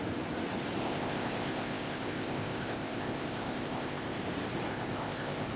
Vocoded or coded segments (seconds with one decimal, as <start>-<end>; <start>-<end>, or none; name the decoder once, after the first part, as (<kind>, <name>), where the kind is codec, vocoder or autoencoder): 0.8-4.2 (codec, ZipCodec); 4.7-5.6